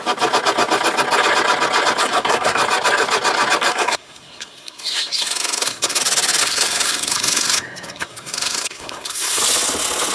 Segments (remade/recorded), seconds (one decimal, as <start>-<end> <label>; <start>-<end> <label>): 0.0-2.0 recorded; 2.0-2.6 remade; 2.6-3.7 recorded; 3.7-6.0 remade; 6.0-6.4 recorded; 6.4-9.4 remade; 9.4-10.1 recorded

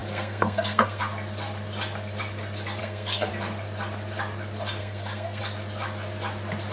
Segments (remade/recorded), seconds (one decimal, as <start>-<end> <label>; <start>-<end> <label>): 0.0-1.0 remade; 1.0-2.8 recorded; 2.8-3.3 remade; 3.3-4.8 recorded; 4.8-5.4 remade; 5.4-6.7 recorded

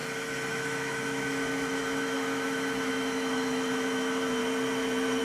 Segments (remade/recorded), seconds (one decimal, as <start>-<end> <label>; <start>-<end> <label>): 0.0-0.5 recorded; 0.5-4.4 remade; 4.4-5.2 recorded